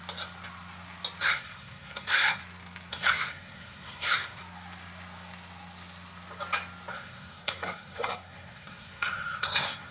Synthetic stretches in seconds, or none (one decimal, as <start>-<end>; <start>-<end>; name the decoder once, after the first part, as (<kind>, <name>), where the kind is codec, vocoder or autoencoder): 1.2-2.4 (codec, SNAC); 2.9-4.4; 6.9-9.9